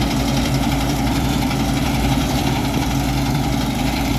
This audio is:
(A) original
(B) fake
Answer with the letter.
B